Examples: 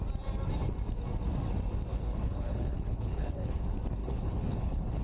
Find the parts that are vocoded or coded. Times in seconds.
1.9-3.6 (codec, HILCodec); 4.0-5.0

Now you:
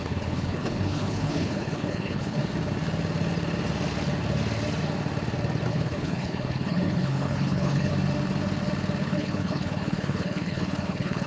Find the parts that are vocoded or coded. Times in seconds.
0.0-2.4 (codec, HILCodec); 5.7-7.9; 9.0-11.3

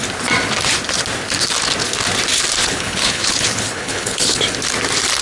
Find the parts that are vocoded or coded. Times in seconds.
2.6-4.4 (codec, HILCodec)

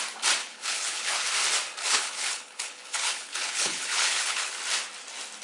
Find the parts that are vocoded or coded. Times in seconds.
0.4-1.3 (codec, HILCodec); 1.8-4.6